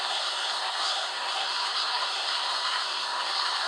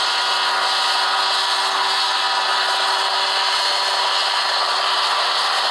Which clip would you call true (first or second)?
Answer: second